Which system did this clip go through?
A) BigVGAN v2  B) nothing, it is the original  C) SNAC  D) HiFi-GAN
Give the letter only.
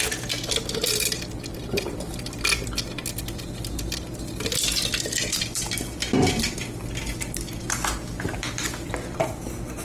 B